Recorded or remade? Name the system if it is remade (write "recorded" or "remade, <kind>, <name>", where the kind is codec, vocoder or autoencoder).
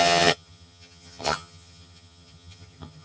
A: remade, vocoder, HiFi-GAN